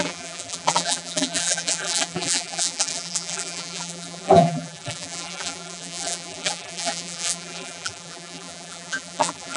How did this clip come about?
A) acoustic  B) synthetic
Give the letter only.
B